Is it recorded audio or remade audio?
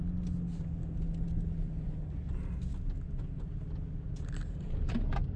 recorded